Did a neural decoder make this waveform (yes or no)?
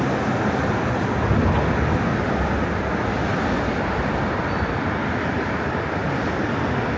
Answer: no